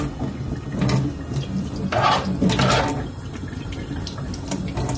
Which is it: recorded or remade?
recorded